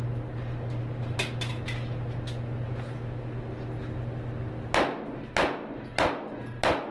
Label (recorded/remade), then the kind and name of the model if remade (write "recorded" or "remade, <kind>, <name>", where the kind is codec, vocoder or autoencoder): recorded